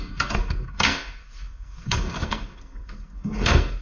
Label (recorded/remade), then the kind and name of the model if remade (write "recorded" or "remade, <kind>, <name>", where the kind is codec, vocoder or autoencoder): remade, codec, SNAC